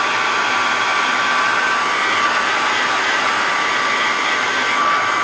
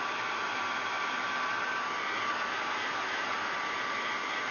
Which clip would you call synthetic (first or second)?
second